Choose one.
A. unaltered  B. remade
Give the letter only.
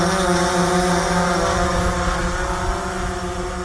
A